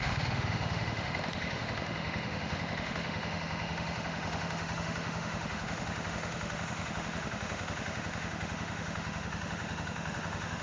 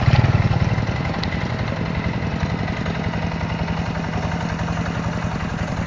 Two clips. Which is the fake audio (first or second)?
first